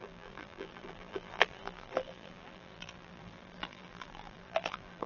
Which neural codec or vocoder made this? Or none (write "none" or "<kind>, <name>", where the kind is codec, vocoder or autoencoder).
vocoder, BigVGAN v2